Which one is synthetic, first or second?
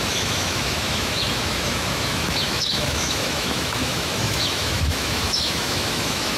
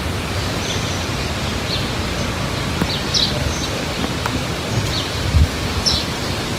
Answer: first